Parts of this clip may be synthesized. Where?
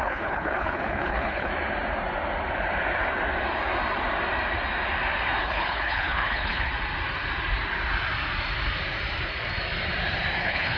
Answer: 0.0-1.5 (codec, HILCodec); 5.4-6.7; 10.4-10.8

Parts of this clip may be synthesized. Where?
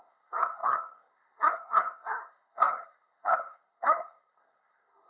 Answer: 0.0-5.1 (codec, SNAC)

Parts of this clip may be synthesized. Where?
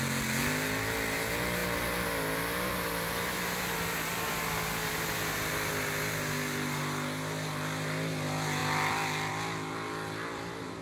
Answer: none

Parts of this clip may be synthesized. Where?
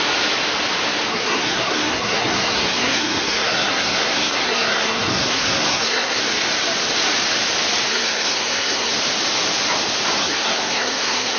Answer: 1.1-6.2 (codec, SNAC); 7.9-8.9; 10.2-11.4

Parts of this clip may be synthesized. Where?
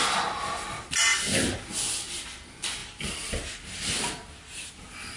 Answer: none